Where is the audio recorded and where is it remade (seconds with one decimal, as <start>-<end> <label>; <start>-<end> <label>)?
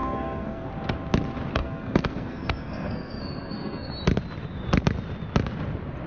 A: 0.0-0.7 remade; 0.7-1.6 recorded; 1.6-3.9 remade; 3.9-6.1 recorded